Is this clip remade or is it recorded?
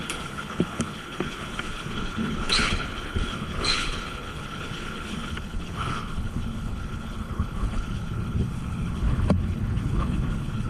remade